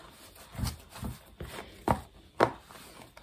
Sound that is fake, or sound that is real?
real